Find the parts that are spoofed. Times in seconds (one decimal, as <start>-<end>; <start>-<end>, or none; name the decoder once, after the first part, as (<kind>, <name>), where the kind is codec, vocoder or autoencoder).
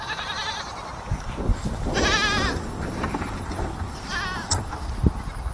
1.5-4.7 (vocoder, BigVGAN v2)